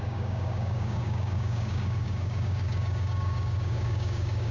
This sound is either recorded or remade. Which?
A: remade